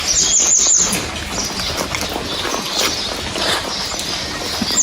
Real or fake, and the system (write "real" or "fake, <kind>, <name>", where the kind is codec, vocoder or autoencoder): real